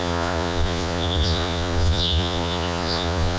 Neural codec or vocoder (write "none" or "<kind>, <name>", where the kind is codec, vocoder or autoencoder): vocoder, Vocos